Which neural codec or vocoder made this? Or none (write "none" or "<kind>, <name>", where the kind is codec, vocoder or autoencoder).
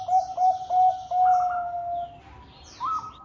none